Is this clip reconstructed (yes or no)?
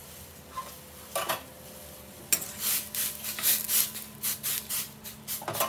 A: no